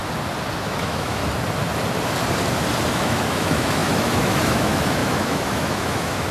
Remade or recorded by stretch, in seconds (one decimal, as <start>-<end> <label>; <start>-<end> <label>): 0.0-0.6 recorded; 0.6-1.2 remade; 1.2-2.9 recorded; 2.9-6.3 remade